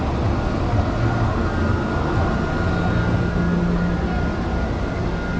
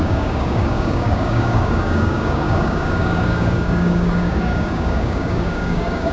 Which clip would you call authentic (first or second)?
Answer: first